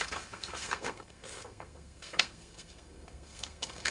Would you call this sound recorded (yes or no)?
no